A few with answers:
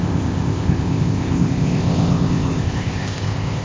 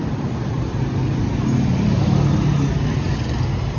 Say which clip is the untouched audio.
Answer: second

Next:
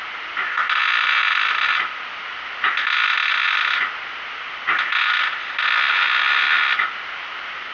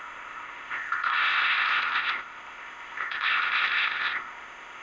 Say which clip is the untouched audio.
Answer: first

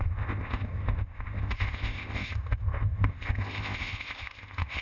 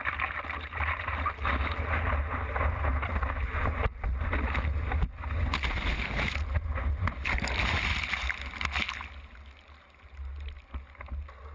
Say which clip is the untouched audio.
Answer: second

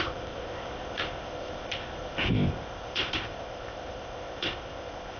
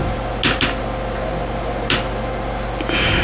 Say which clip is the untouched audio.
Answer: second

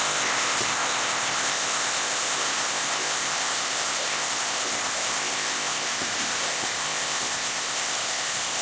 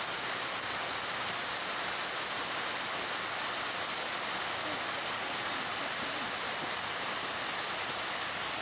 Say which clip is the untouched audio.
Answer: second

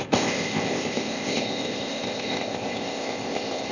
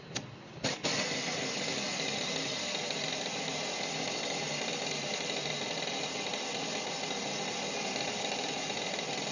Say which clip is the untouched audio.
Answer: second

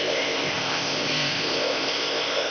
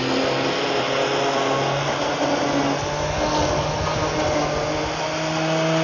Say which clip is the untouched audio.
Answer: second